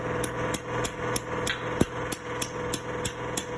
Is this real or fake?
real